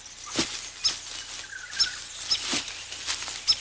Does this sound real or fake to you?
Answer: real